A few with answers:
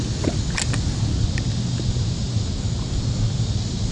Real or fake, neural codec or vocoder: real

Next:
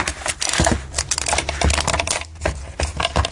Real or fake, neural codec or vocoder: real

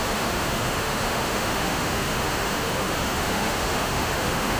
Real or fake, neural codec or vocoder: fake, autoencoder, DAC-VAE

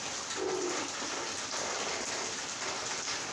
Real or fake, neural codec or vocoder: real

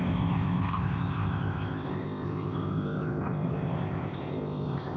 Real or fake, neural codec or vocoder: fake, codec, ZipCodec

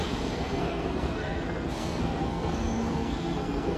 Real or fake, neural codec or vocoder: fake, codec, SNAC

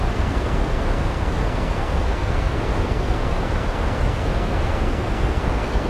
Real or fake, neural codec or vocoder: fake, codec, SNAC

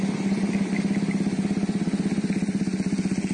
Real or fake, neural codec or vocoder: real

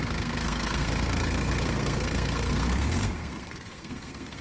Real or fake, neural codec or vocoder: fake, codec, SNAC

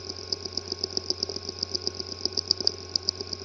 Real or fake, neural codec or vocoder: real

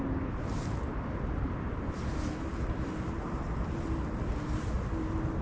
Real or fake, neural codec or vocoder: real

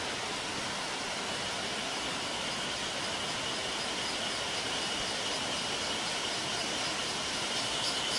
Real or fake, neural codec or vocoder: real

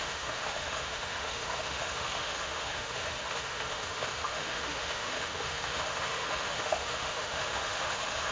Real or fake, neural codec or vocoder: fake, autoencoder, DAC-VAE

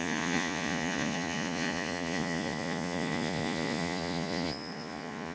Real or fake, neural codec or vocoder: fake, vocoder, Vocos